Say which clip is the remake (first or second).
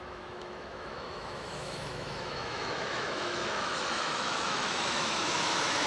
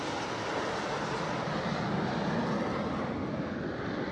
first